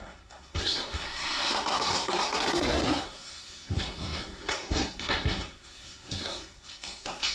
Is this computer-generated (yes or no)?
yes